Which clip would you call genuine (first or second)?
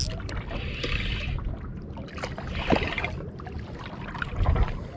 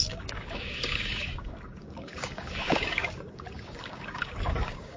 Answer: first